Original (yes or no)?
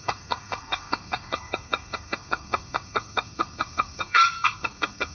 no